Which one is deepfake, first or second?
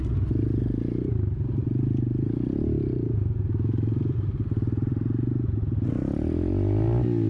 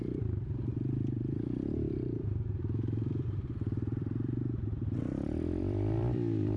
second